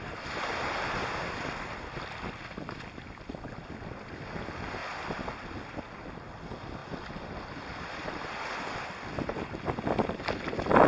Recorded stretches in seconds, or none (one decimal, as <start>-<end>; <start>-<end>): 0.0-10.9